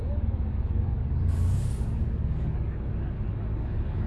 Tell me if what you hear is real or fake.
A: fake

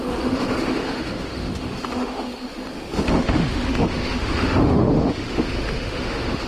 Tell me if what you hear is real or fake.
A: fake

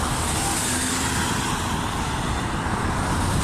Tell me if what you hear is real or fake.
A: real